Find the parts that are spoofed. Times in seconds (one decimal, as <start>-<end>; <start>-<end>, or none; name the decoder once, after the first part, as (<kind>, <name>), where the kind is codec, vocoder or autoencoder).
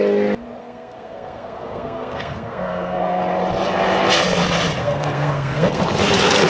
0.6-3.2 (codec, SNAC); 4.8-5.8